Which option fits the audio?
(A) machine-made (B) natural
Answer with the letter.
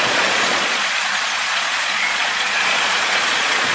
A